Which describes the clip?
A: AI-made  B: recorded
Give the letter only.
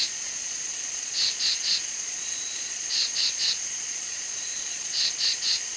A